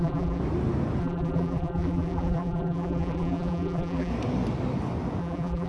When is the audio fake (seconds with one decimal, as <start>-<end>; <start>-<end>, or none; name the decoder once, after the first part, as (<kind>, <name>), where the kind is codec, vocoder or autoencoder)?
0.0-0.4 (vocoder, BigVGAN v2); 1.0-4.1; 5.2-5.7